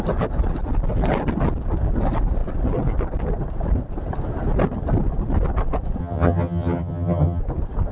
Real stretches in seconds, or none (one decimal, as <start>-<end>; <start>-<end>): 0.0-6.0; 7.4-7.9